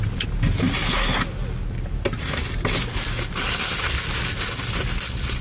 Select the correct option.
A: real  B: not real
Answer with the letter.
A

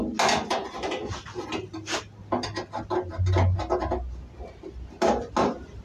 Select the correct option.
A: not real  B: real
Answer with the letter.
B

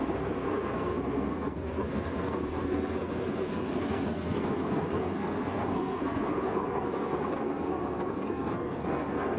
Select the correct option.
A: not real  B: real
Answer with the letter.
A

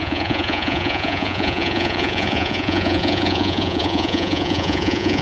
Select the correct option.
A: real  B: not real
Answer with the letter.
B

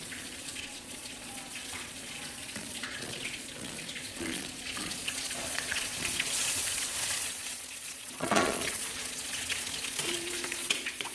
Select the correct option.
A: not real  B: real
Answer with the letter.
A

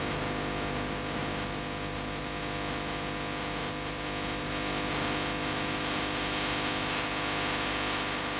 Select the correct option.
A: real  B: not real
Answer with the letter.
A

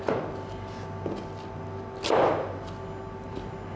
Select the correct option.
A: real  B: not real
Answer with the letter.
A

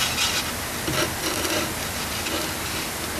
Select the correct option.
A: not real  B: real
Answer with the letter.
B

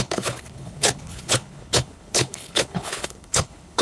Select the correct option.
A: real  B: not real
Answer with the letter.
B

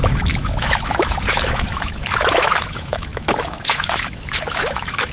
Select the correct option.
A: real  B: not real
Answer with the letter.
B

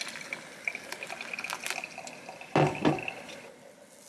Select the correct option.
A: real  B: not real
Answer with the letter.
A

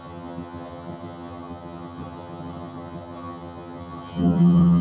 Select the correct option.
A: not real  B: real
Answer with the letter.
A